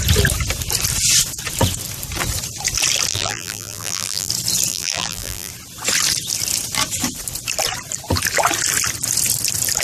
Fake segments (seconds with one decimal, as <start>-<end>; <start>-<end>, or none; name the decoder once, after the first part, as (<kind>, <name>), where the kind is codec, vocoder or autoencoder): 3.1-4.3 (vocoder, BigVGAN v2); 4.7-5.5